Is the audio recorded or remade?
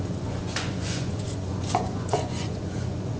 remade